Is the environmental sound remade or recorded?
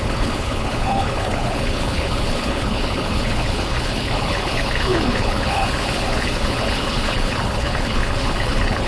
remade